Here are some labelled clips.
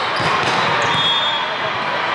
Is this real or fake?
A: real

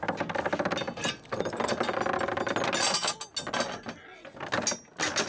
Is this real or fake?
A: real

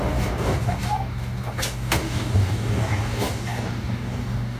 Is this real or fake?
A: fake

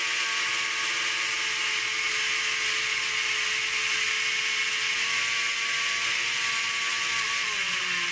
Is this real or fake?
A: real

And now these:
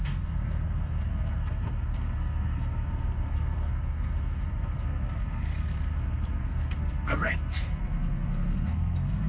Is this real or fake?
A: fake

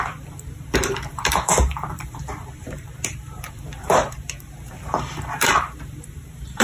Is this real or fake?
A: fake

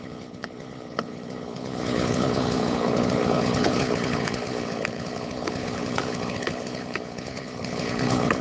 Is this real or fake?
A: fake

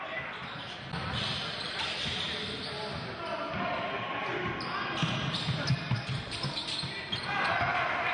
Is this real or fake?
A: real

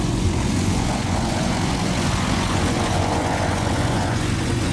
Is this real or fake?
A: fake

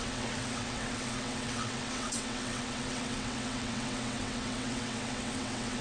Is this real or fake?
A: fake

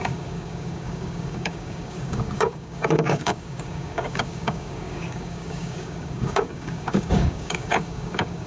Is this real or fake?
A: fake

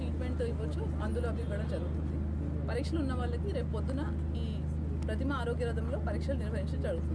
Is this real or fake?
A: real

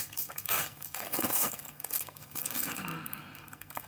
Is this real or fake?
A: fake